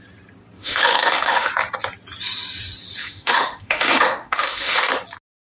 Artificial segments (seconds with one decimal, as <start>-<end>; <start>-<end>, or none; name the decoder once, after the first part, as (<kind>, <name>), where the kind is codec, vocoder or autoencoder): 0.6-1.5 (autoencoder, DAC-VAE); 3.0-4.9